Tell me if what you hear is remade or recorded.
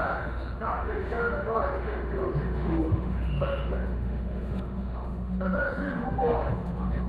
remade